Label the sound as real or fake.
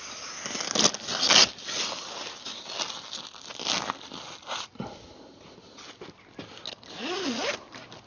real